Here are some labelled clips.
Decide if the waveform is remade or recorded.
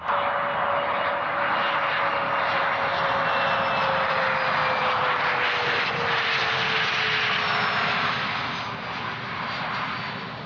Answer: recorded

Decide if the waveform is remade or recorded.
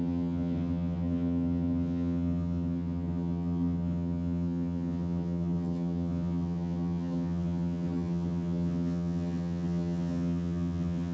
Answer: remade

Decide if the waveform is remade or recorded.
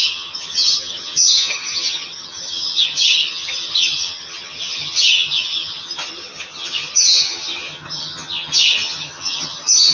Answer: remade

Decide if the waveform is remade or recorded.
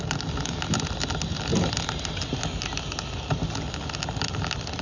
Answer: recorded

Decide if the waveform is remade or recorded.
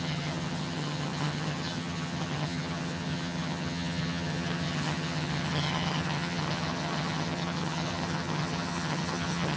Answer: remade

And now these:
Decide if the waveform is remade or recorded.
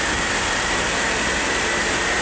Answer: recorded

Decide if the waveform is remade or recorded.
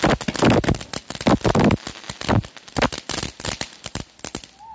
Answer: recorded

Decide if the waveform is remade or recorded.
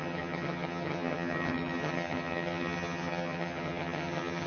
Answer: remade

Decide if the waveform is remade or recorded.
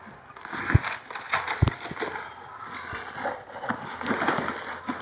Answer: recorded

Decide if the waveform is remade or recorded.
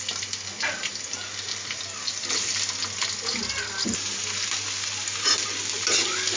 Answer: recorded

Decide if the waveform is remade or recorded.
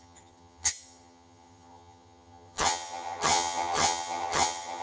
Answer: remade